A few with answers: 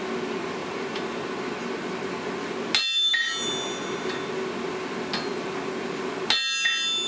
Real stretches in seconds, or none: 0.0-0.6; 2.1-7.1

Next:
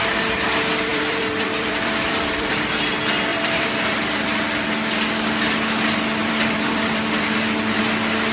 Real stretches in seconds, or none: 0.0-0.9; 2.5-3.3; 4.7-6.2; 7.7-8.3

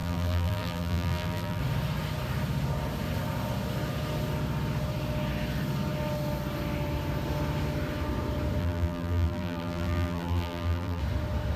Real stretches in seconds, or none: 1.6-8.6; 11.0-11.6

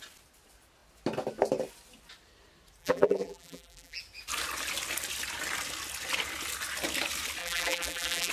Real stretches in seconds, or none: 0.0-2.8; 4.0-7.4

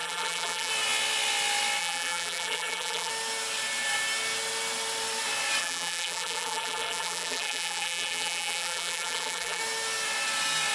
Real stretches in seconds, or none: 0.7-1.8; 3.1-5.6; 9.6-10.7

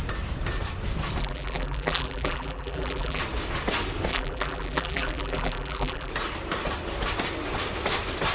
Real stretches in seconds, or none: 0.0-1.2; 3.2-4.1; 6.1-8.3

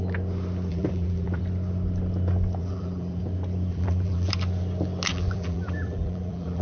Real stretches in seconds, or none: 0.0-0.7; 1.4-2.6; 3.2-3.7; 4.3-5.1